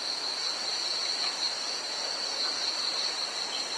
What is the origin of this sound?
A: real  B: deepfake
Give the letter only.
B